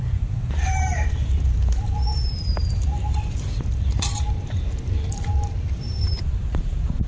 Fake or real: fake